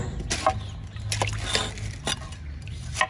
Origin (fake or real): real